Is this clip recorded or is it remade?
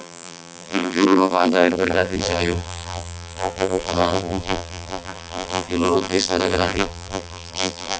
remade